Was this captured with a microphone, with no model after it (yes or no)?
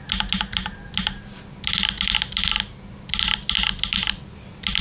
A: yes